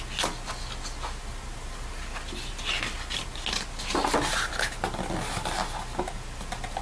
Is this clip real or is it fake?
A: real